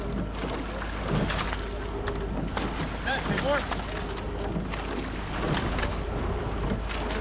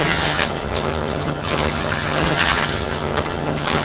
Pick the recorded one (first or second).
first